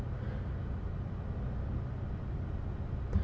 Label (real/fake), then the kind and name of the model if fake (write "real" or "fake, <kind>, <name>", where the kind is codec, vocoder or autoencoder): real